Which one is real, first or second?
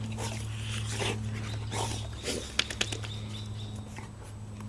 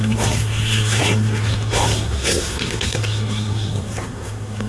first